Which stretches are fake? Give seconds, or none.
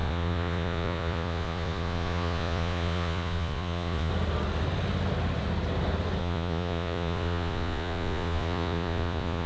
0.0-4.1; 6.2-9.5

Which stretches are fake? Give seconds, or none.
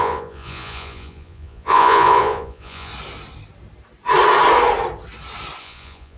0.0-2.9; 5.6-6.2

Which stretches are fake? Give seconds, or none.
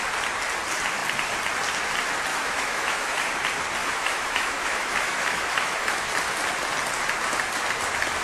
2.3-3.3; 3.8-6.1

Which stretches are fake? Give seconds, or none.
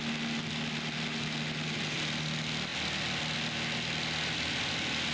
none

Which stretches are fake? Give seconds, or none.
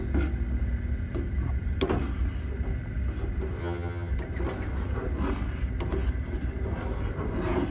3.6-4.1